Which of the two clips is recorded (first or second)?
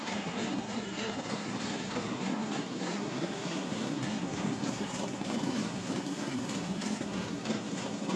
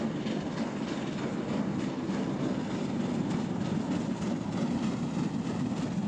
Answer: second